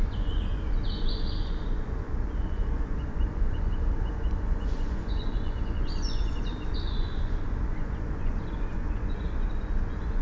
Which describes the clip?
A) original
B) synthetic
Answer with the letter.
B